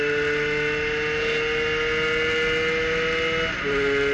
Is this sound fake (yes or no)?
no